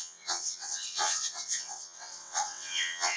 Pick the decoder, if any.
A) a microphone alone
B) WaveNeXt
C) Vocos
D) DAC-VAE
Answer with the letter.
B